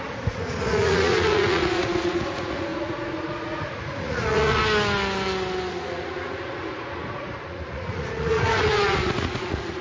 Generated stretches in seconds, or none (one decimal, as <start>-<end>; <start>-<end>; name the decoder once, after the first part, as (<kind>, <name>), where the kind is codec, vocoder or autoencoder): 0.0-4.6 (vocoder, Vocos); 5.7-9.8